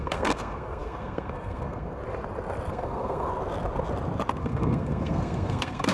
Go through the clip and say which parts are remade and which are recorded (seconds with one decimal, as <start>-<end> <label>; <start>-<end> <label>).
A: 0.0-2.0 remade; 2.0-2.7 recorded; 2.7-3.3 remade; 3.3-4.4 recorded; 4.4-5.9 remade